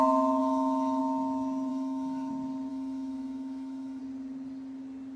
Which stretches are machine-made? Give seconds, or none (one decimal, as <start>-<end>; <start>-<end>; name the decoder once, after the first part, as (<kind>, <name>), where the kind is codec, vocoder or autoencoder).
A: 0.4-1.0 (autoencoder, DAC-VAE); 1.7-2.3; 2.7-4.0